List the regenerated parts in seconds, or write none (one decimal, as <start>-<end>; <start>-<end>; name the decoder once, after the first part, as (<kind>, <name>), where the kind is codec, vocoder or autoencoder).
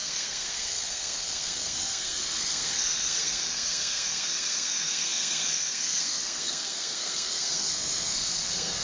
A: 0.0-8.8 (codec, SNAC)